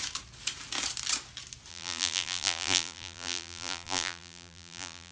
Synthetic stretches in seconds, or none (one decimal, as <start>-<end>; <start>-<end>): 1.7-5.1